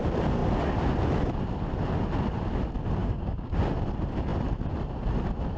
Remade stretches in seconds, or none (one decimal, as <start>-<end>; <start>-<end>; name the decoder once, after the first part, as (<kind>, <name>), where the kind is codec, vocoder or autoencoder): 3.0-3.6 (codec, DAC)